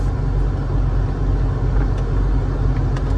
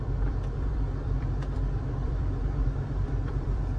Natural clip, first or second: first